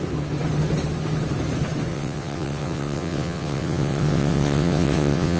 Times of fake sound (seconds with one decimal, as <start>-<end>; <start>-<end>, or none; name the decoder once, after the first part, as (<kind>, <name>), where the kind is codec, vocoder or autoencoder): 1.9-5.4 (vocoder, WaveNeXt)